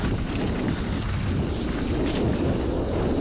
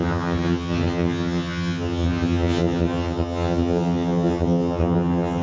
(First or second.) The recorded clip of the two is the first